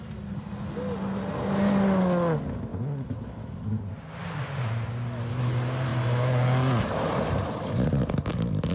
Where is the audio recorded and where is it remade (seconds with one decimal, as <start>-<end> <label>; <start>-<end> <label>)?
0.0-8.7 recorded